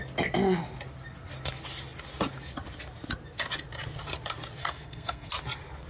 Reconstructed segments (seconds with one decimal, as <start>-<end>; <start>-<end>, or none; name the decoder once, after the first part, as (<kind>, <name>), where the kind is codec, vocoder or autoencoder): 4.6-5.3 (codec, SNAC)